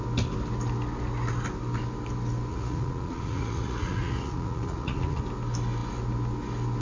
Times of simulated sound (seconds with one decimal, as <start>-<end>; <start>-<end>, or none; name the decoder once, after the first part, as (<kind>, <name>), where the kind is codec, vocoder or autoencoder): 2.5-5.2 (vocoder, Vocos)